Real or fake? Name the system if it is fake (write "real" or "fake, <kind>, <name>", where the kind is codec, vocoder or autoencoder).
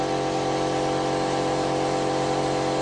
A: real